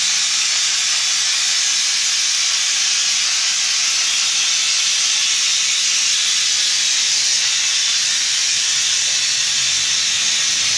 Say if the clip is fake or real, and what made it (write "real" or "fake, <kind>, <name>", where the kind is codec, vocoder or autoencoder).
real